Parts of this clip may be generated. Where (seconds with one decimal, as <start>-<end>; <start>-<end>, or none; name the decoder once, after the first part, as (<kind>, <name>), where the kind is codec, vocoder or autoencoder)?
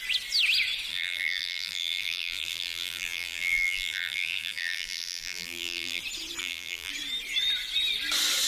0.9-6.0 (vocoder, BigVGAN v2); 6.4-6.9